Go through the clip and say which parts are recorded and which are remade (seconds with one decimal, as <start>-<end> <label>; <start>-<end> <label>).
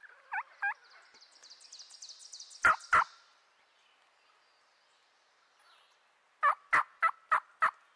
0.0-8.0 recorded